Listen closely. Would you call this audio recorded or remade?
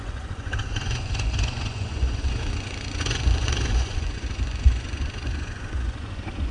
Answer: remade